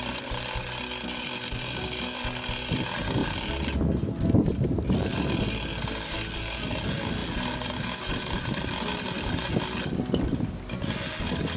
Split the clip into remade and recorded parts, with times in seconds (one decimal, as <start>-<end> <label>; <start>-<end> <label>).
0.0-11.6 recorded